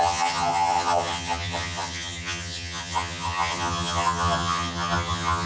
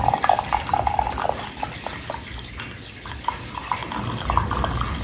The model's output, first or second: first